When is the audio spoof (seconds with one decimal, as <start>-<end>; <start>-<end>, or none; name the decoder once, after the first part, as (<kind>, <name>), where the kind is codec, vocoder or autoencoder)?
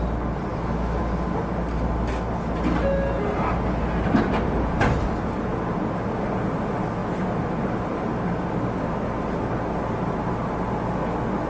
0.5-1.0 (autoencoder, DAC-VAE)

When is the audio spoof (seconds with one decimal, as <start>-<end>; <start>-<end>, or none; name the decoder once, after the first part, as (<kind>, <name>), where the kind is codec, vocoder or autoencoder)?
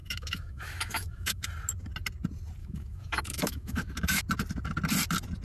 0.0-1.5 (autoencoder, DAC-VAE); 2.6-4.2